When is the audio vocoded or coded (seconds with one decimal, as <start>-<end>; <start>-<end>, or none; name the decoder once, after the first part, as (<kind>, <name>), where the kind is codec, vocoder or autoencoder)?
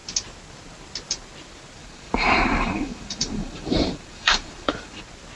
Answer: 1.8-5.0 (vocoder, BigVGAN v2)